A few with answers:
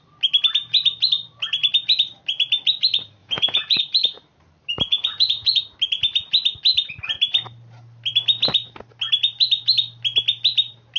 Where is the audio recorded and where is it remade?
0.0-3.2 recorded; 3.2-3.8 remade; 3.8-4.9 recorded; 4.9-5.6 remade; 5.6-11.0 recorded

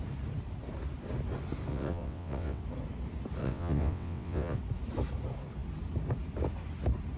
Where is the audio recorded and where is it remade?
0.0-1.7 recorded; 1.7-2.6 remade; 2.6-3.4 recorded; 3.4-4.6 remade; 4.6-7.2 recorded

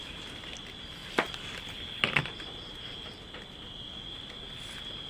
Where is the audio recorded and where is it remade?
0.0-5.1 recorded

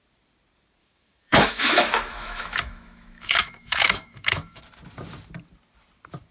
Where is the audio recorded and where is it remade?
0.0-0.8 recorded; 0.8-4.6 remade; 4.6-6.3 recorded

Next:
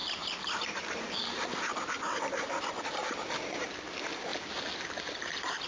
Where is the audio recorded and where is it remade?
0.0-2.8 remade; 2.8-5.7 recorded

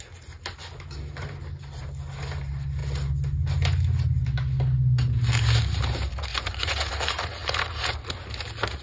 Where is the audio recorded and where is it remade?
0.0-6.3 recorded; 6.3-6.9 remade; 6.9-8.8 recorded

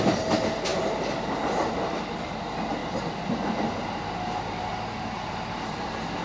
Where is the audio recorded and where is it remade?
0.0-0.7 recorded; 0.7-1.7 remade; 1.7-2.8 recorded; 2.8-3.8 remade; 3.8-6.2 recorded